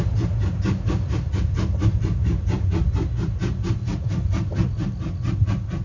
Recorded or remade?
recorded